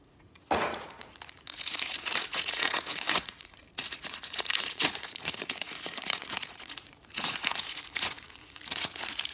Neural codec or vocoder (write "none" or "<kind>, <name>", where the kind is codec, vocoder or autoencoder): vocoder, Vocos